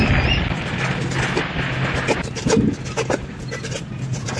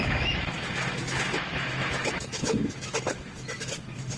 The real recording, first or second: first